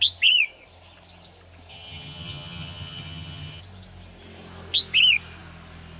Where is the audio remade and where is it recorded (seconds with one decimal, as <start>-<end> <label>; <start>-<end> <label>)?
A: 0.0-1.7 recorded; 1.7-3.6 remade; 3.6-6.0 recorded